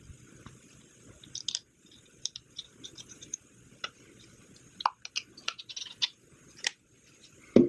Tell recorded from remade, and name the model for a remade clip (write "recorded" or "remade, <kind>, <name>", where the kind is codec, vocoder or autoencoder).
recorded